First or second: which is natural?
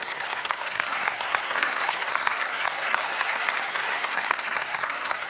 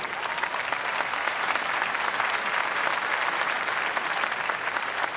second